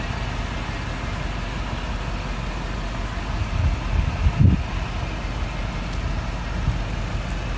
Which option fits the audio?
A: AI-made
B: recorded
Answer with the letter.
B